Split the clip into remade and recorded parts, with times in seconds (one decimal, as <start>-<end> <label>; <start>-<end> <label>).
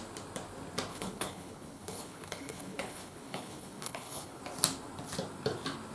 0.0-0.9 recorded; 0.9-4.4 remade; 4.4-5.9 recorded